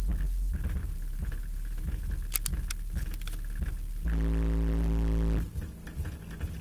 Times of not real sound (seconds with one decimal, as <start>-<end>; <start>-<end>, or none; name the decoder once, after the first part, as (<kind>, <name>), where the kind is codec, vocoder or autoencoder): 0.8-2.1 (vocoder, BigVGAN v2)

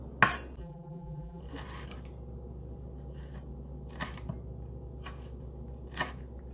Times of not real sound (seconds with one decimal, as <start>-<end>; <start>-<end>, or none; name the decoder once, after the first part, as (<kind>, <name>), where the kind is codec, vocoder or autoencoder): 0.6-1.4 (vocoder, BigVGAN v2)

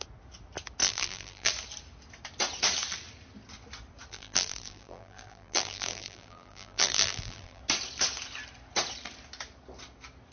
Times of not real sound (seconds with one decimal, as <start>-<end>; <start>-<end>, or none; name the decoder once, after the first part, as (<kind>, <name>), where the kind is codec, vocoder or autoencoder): 0.8-1.5 (vocoder, BigVGAN v2); 4.1-7.6

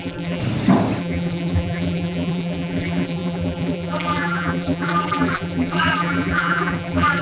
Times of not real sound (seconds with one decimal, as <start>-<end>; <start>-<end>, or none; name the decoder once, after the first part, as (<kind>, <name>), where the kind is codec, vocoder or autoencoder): 0.0-0.4 (vocoder, BigVGAN v2); 1.0-7.2

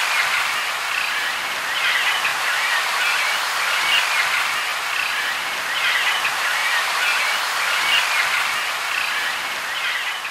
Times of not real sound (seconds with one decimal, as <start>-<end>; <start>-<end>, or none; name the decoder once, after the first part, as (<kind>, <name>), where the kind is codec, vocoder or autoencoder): 2.3-3.2 (vocoder, BigVGAN v2); 6.6-7.2

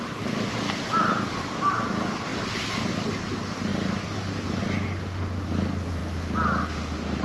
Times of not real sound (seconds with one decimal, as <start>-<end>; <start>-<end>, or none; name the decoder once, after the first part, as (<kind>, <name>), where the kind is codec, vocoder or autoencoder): 2.3-2.9 (vocoder, BigVGAN v2)

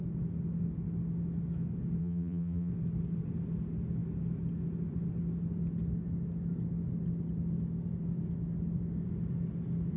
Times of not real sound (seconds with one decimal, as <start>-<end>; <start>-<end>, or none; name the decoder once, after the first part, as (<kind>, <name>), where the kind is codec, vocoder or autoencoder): 2.0-2.7 (vocoder, BigVGAN v2)

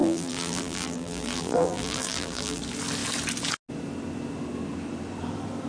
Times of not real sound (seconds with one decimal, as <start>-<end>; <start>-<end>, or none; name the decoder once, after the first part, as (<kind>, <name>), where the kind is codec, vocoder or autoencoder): 0.0-2.6 (vocoder, BigVGAN v2)